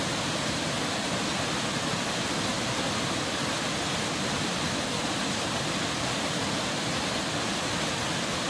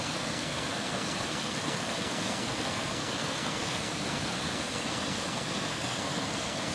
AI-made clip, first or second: second